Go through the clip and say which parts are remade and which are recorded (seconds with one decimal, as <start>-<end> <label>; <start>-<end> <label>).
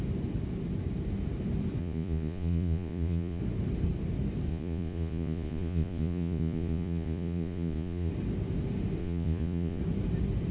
0.0-1.8 recorded; 1.8-3.4 remade; 3.4-4.5 recorded; 4.5-8.1 remade; 8.1-9.0 recorded; 9.0-9.8 remade; 9.8-10.5 recorded